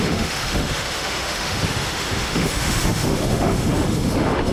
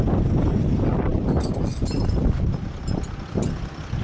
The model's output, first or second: first